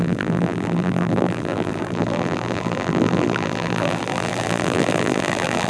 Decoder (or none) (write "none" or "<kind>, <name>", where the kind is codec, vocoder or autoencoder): vocoder, BigVGAN v2